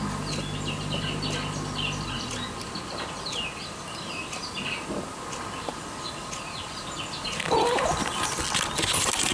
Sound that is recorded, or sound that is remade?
recorded